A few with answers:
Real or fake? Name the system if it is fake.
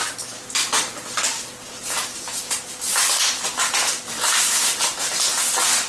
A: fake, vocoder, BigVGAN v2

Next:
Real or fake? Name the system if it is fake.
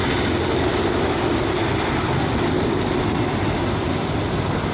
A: real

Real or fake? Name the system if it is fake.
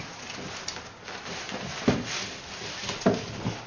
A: real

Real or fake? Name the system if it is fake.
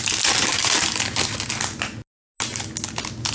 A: real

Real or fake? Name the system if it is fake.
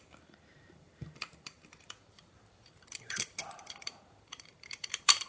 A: fake, vocoder, BigVGAN v2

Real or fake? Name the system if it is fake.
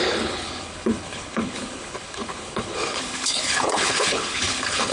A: fake, codec, HILCodec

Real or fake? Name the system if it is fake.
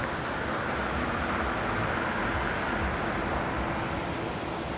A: real